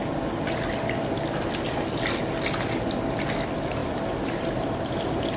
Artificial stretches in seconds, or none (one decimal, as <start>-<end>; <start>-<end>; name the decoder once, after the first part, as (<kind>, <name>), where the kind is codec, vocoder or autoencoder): 3.8-5.4 (vocoder, BigVGAN v2)